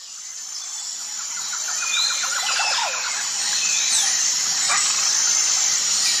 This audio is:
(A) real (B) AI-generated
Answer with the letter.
A